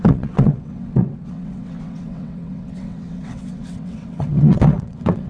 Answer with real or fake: fake